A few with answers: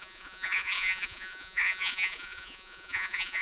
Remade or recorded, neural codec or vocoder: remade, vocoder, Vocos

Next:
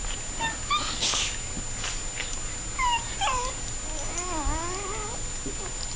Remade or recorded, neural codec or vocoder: recorded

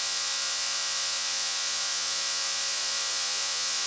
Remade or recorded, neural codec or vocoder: remade, vocoder, Vocos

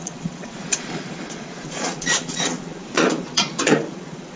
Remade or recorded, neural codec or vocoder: remade, vocoder, Vocos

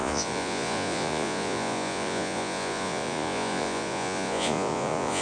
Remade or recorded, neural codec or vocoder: remade, vocoder, Vocos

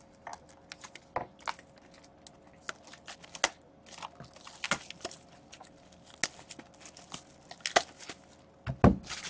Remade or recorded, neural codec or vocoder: recorded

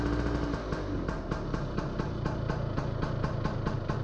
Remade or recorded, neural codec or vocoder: recorded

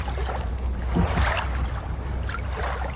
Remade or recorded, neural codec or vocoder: recorded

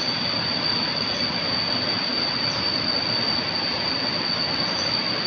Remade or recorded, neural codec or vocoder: recorded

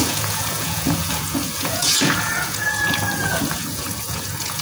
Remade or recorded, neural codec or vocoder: remade, vocoder, Vocos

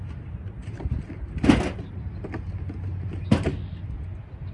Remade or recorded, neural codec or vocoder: recorded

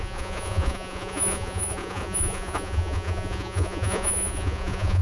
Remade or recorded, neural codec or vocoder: remade, vocoder, Vocos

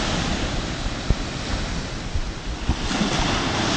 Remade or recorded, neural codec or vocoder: recorded